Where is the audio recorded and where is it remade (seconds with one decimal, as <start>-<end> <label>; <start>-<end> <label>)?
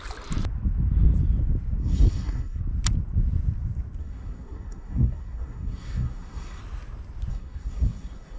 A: 0.0-1.8 recorded; 1.8-2.6 remade; 2.6-4.0 recorded; 4.0-6.6 remade; 6.6-7.3 recorded; 7.3-8.4 remade